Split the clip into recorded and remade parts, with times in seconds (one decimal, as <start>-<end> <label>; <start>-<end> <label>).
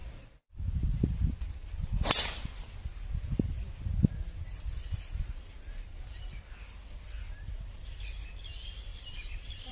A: 0.0-9.7 recorded